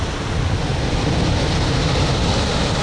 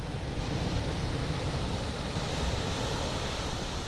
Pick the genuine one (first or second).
first